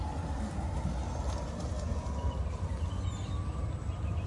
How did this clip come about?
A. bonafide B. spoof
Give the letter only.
A